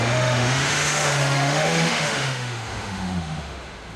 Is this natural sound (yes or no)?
no